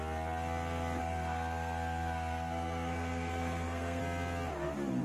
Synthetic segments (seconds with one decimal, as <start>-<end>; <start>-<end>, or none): 1.0-4.0